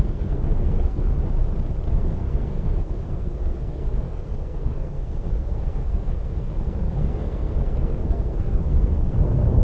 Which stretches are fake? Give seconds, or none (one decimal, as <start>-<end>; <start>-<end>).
0.0-1.1; 1.9-9.6